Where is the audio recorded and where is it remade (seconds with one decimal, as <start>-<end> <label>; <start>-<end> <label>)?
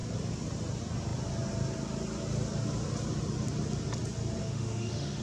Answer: 0.0-4.4 recorded; 4.4-5.2 remade